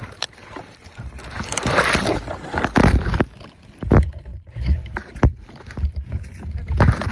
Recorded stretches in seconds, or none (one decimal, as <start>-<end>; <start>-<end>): 0.0-4.3; 5.2-7.1